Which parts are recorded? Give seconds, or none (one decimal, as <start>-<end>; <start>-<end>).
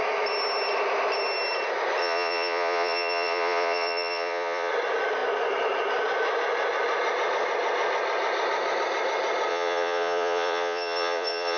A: 0.0-2.0; 4.7-9.5